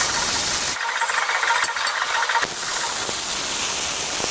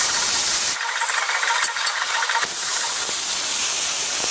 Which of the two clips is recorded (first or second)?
first